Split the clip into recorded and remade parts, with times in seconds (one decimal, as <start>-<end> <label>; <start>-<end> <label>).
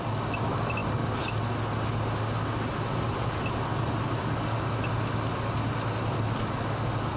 0.0-7.2 recorded